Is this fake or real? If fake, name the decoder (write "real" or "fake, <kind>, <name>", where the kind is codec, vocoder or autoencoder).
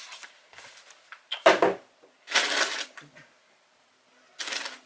real